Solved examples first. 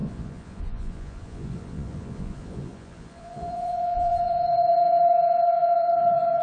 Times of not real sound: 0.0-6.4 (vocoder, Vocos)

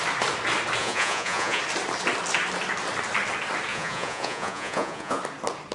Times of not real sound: 0.8-1.6 (vocoder, Vocos); 3.7-5.2

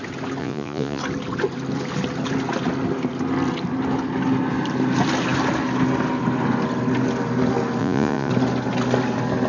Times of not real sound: 0.4-1.0 (vocoder, Vocos); 7.8-8.3

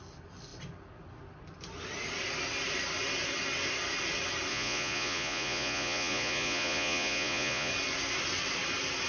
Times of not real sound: 4.5-7.7 (vocoder, Vocos)